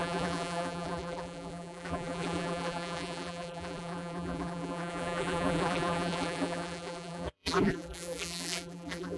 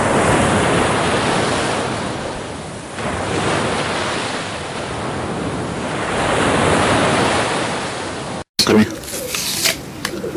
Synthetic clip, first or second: first